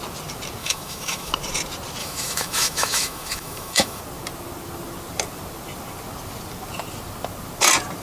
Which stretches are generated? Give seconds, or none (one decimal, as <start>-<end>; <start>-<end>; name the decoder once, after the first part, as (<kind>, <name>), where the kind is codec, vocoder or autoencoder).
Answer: 0.6-1.3 (autoencoder, DAC-VAE); 2.0-4.0

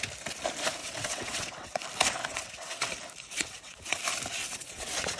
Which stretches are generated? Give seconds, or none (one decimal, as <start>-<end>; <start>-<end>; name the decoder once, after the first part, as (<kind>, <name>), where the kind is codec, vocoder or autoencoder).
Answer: 0.8-1.8 (vocoder, WaveNeXt); 2.2-2.9; 3.3-4.0; 4.4-5.2

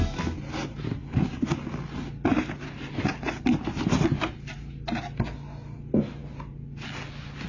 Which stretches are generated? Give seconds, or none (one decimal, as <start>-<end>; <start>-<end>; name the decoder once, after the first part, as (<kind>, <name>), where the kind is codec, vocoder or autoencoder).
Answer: none